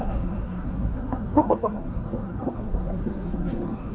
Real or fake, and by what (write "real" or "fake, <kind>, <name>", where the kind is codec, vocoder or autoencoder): fake, codec, SNAC